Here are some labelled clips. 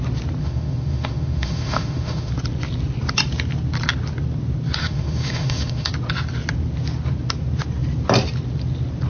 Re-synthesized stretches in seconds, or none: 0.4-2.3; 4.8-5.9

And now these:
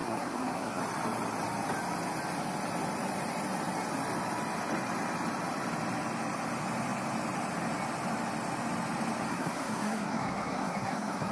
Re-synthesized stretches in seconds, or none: 0.0-0.8; 9.3-11.3

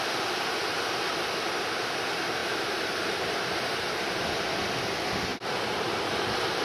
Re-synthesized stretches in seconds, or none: 2.4-4.3; 5.3-6.1

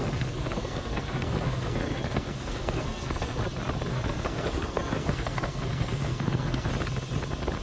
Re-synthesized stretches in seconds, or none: 0.0-3.4; 3.9-6.7

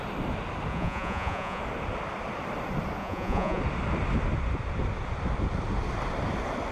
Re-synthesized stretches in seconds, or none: 0.7-1.6; 3.0-3.6